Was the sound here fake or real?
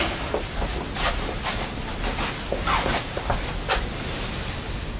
real